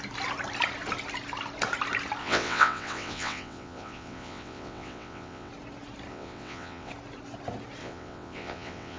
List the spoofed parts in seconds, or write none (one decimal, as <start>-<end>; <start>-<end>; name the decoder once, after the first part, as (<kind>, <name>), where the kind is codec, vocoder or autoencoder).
2.2-5.5 (vocoder, WaveNeXt); 6.1-6.9; 7.8-9.0